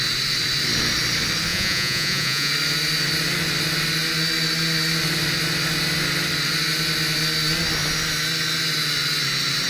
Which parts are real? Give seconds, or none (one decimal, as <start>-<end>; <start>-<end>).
0.0-1.5; 2.5-9.7